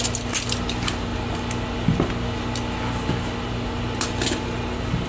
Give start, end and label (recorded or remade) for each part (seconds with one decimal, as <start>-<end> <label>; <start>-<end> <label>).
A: 0.0-5.1 recorded